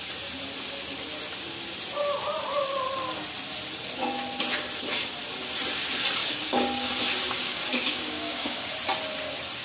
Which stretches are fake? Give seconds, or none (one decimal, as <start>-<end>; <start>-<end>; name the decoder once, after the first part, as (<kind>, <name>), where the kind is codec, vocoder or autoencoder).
6.2-6.9 (codec, DAC); 7.4-8.7